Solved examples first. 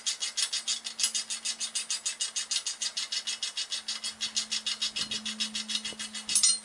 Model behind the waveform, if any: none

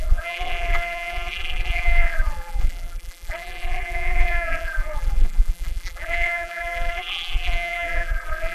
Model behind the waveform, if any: vocoder, BigVGAN v2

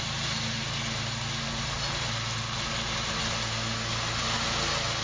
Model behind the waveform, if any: none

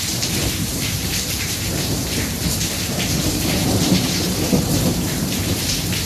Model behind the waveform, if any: vocoder, BigVGAN v2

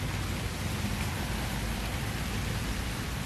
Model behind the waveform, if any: vocoder, BigVGAN v2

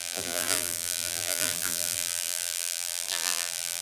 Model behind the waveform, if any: vocoder, BigVGAN v2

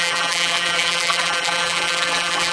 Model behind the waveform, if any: vocoder, BigVGAN v2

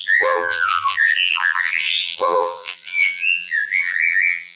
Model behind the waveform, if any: vocoder, BigVGAN v2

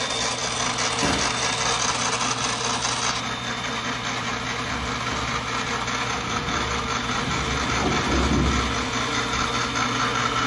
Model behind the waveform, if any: none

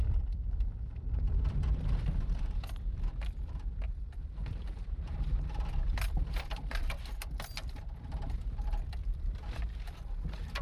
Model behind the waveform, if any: vocoder, BigVGAN v2